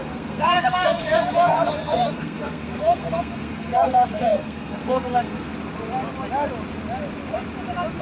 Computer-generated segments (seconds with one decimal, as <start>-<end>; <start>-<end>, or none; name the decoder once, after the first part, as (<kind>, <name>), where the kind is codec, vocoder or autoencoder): 0.0-5.5 (codec, SNAC)